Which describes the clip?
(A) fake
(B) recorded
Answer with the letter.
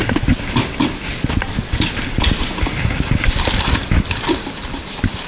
B